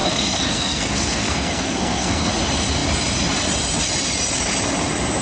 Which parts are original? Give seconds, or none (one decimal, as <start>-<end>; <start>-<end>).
2.3-5.2